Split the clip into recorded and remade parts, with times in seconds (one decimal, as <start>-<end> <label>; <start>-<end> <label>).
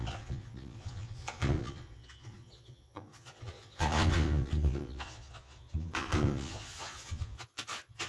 0.0-8.1 remade